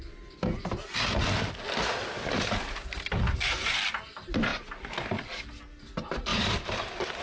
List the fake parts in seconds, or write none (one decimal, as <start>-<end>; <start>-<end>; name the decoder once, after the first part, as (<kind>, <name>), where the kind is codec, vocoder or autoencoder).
2.1-3.8 (vocoder, BigVGAN v2); 6.3-7.2